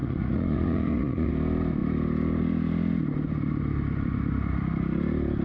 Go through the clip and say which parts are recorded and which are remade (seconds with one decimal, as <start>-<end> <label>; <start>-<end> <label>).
0.0-1.3 remade; 1.3-5.4 recorded